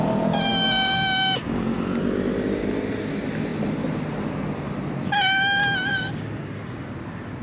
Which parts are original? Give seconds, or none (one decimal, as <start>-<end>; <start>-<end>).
0.0-0.5; 2.0-5.9; 6.9-7.4